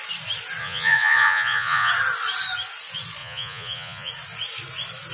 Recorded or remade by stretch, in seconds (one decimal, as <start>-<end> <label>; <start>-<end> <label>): 0.0-0.6 recorded; 0.6-1.9 remade; 1.9-3.2 recorded; 3.2-4.1 remade; 4.1-5.1 recorded